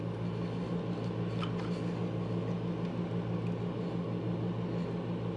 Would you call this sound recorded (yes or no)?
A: yes